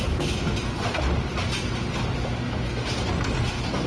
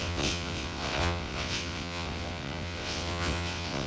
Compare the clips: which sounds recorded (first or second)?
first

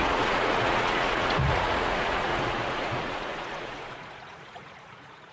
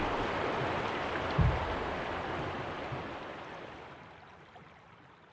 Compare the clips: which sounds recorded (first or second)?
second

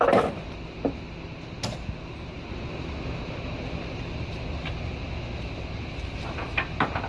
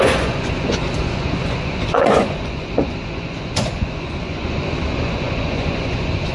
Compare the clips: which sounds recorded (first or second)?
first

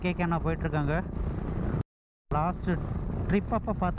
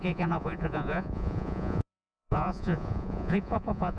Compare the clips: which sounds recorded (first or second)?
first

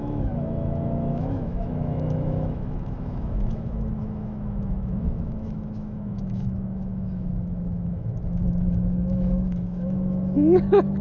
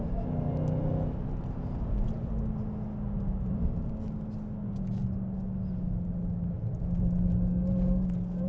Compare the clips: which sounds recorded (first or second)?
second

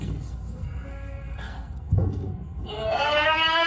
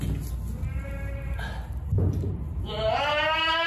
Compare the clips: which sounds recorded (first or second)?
second